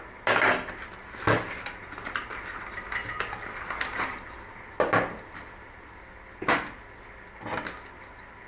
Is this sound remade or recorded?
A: recorded